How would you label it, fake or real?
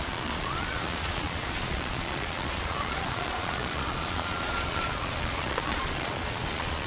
fake